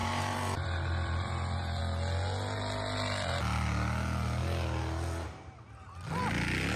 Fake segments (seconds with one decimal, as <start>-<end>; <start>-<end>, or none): 0.0-1.8